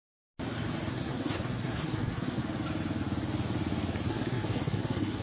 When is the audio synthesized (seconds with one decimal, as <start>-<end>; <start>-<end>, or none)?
0.9-2.4; 4.1-5.2